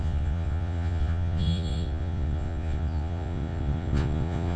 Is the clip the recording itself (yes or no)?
no